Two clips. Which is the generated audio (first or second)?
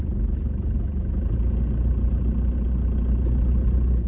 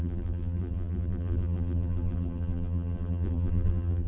second